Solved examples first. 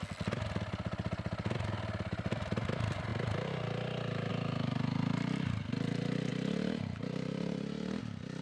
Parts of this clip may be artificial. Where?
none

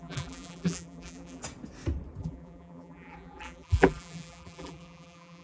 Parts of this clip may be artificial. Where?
0.0-1.4 (vocoder, BigVGAN v2); 2.2-5.4

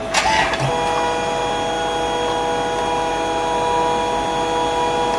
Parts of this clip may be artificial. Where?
none

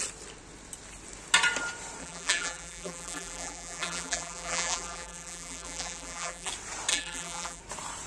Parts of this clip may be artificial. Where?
2.0-6.5 (vocoder, BigVGAN v2); 6.9-7.6

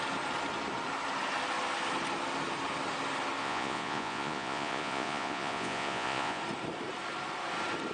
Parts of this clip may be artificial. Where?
3.4-6.4 (vocoder, Vocos)

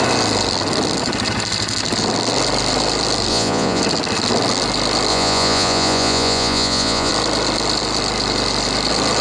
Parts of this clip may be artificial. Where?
3.3-3.8 (vocoder, Vocos); 5.1-7.1

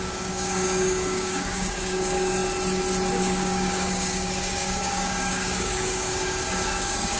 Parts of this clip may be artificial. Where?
0.0-2.4 (codec, DAC); 3.2-7.2